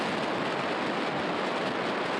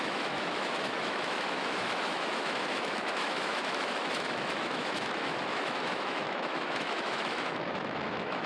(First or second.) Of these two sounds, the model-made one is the second